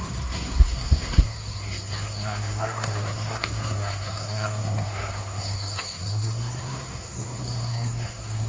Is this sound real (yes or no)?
no